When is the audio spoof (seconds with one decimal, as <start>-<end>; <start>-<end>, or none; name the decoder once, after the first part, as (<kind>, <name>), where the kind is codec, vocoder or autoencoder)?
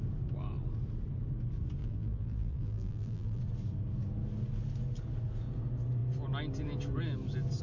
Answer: 1.8-3.4 (vocoder, BigVGAN v2)